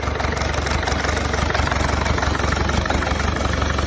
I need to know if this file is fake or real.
real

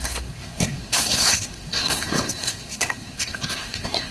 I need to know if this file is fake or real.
fake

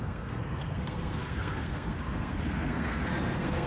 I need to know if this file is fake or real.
fake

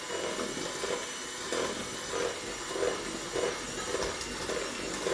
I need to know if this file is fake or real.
real